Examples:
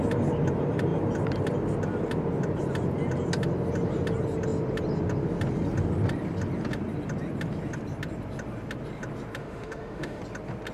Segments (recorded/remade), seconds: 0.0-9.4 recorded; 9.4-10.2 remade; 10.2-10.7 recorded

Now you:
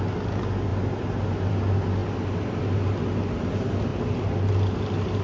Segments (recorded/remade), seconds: 0.0-5.2 recorded

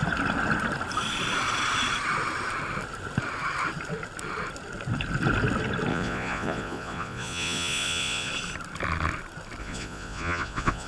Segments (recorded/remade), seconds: 0.0-5.9 recorded; 5.9-8.3 remade; 8.3-9.6 recorded; 9.6-10.9 remade